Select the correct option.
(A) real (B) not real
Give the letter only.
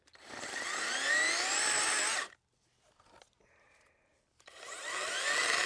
A